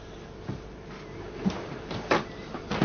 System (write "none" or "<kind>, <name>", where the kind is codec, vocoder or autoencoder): vocoder, BigVGAN v2